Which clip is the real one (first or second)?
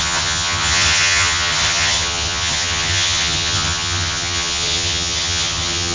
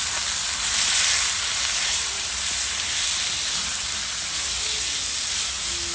second